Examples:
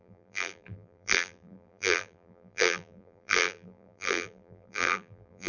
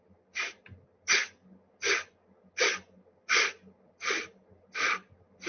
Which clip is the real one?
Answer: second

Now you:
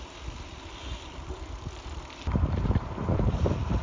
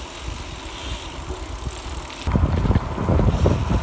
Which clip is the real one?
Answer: second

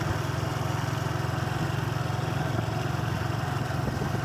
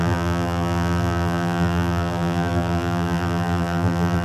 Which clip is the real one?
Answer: first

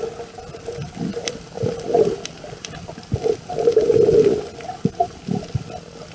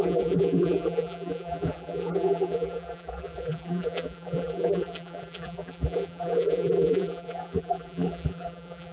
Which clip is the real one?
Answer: first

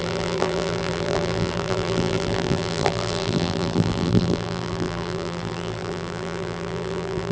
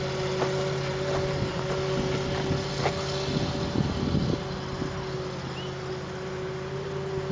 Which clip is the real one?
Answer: second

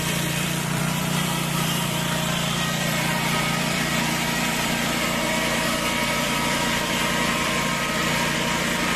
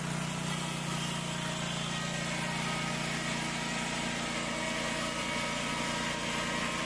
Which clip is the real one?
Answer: second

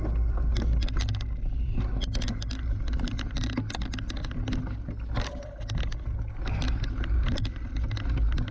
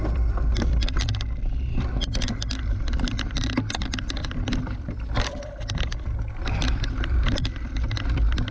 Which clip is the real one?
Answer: first